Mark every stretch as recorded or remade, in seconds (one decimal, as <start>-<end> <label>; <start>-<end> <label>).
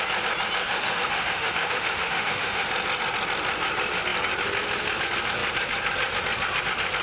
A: 0.0-0.6 recorded; 0.6-2.7 remade; 2.7-7.0 recorded